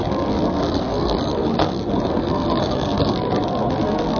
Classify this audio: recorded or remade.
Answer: remade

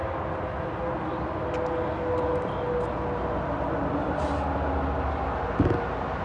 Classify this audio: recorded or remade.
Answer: recorded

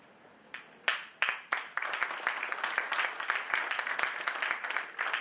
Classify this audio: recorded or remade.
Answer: recorded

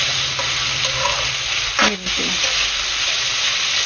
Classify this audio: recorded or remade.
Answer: recorded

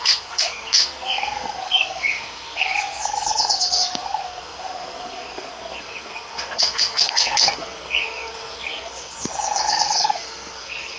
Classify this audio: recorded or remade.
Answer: remade